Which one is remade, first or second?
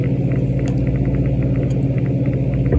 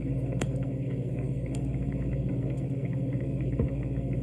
second